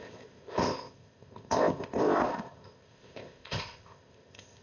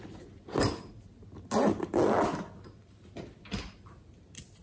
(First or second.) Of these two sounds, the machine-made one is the first